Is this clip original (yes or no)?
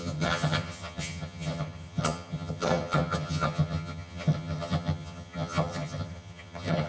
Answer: no